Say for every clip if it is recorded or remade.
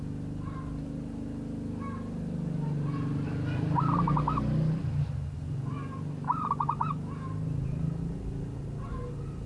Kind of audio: recorded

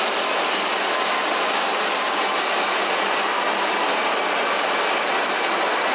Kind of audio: recorded